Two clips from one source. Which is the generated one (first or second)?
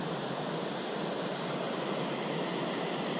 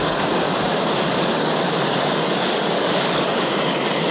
second